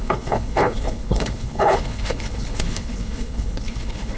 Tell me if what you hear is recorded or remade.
remade